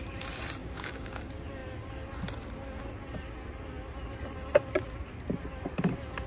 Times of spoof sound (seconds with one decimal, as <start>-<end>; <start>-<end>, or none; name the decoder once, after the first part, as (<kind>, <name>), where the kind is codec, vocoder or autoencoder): 0.6-1.2 (codec, DAC)